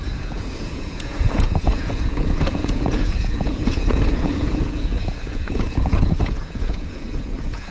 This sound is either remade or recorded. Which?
remade